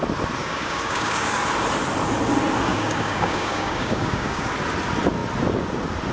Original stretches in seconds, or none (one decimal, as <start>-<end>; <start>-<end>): 0.0-0.4; 1.4-2.7; 4.5-6.1